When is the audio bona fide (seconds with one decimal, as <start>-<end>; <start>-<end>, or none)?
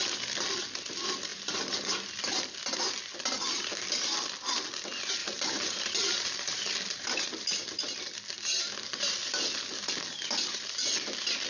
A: 0.0-5.2; 8.0-11.5